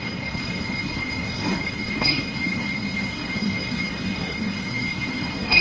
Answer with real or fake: fake